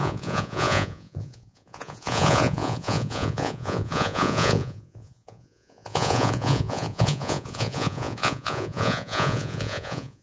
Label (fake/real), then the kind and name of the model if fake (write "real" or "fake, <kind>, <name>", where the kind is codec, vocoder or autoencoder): fake, vocoder, Vocos